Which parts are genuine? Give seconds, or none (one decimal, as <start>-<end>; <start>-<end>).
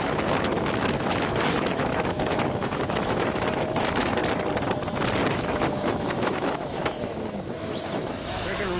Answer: 4.2-5.3